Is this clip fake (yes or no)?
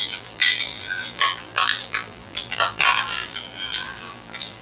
yes